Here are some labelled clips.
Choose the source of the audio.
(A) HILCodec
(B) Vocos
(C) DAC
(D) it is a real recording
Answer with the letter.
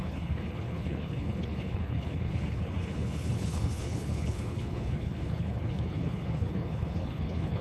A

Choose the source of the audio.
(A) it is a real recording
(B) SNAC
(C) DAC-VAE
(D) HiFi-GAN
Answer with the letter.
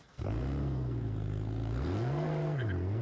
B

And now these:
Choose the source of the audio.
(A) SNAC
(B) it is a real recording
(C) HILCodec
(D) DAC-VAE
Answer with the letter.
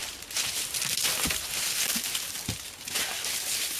B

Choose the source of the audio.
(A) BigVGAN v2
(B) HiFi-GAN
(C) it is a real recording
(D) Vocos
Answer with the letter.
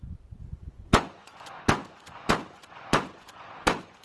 D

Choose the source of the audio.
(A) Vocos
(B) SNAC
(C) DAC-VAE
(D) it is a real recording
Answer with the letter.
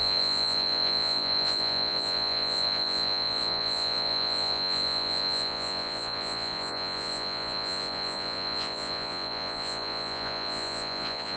A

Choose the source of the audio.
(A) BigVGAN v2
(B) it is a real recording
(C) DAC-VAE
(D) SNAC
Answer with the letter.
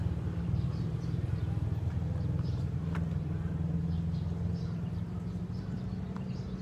B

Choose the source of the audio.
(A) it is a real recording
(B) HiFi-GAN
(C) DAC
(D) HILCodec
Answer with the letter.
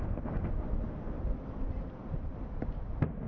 A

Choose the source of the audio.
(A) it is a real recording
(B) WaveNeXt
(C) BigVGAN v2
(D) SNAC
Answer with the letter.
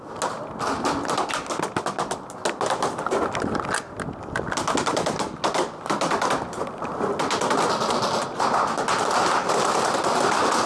A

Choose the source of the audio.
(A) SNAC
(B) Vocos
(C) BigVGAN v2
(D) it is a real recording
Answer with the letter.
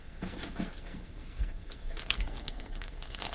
A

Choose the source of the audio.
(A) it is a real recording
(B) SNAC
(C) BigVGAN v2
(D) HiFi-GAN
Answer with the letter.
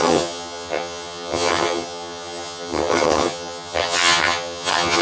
D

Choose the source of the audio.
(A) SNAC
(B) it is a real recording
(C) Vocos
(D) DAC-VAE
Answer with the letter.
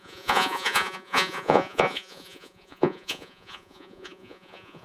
C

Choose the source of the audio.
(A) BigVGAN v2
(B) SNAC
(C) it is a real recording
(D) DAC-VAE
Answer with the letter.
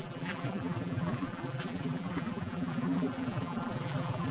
A